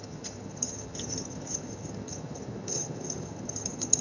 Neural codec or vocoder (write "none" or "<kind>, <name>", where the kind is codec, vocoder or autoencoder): vocoder, HiFi-GAN